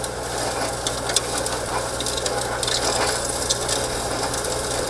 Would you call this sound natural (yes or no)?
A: yes